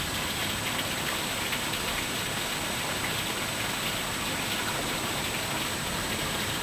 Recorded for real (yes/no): yes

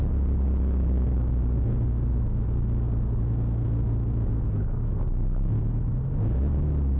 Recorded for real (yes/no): yes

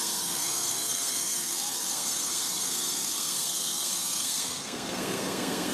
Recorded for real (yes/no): no